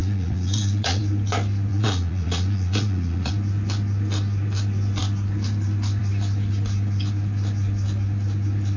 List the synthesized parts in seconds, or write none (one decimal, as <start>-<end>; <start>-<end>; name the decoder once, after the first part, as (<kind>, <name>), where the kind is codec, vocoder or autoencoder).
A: 0.0-1.0 (vocoder, Vocos); 1.7-3.3